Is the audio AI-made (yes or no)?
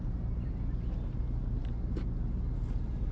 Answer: no